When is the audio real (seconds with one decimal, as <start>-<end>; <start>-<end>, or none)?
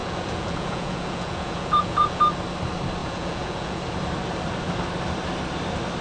2.2-3.0; 3.8-6.0